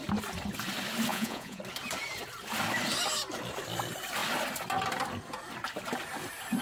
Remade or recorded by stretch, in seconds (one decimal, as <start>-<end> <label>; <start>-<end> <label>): 0.0-1.1 recorded; 1.1-1.6 remade; 1.6-6.6 recorded